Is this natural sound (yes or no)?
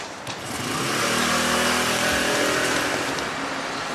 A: yes